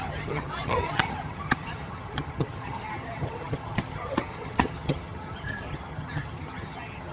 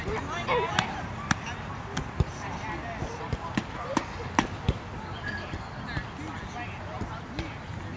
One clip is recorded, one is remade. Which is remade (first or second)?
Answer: first